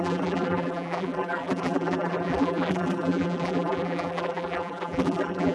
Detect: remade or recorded remade